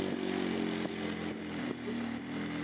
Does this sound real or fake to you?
real